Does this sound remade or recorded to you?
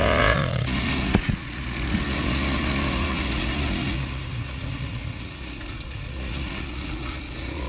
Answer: remade